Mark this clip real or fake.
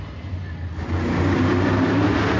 real